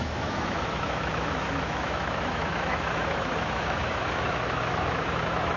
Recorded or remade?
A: remade